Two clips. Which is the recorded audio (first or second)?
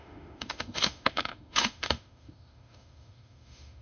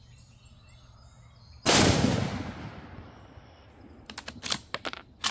second